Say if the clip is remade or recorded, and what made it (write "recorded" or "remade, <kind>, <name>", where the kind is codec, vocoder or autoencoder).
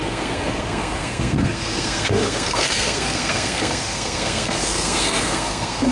remade, codec, SNAC